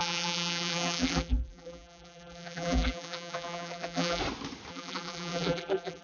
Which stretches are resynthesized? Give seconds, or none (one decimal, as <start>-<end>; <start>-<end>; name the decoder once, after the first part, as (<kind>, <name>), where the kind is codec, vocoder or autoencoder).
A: 0.0-4.2 (vocoder, BigVGAN v2); 4.7-6.0